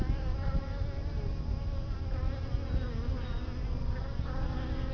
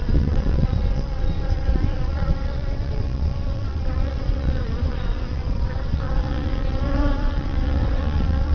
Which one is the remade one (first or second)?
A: second